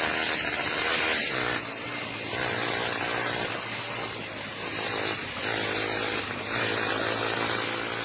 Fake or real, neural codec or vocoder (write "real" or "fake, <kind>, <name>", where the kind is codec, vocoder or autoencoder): real